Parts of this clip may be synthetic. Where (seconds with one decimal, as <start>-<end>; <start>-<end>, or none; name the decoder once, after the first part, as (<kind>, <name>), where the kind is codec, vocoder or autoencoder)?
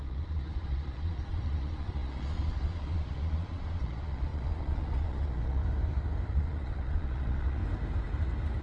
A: 0.0-5.6 (vocoder, Vocos); 6.3-7.6